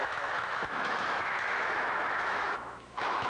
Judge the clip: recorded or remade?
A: remade